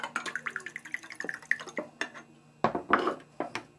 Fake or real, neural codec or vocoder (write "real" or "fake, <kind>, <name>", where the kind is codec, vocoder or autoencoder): real